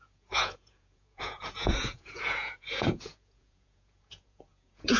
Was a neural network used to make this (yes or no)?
yes